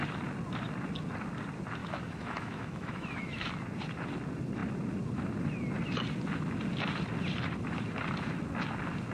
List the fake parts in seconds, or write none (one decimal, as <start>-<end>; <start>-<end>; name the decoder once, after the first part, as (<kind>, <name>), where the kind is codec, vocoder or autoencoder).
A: 1.8-3.5 (autoencoder, DAC-VAE)